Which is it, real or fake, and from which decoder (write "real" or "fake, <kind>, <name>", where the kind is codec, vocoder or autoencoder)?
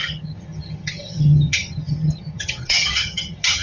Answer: fake, vocoder, HiFi-GAN